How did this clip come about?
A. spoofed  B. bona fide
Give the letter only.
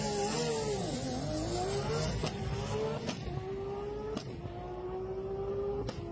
B